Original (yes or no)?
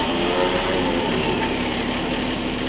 no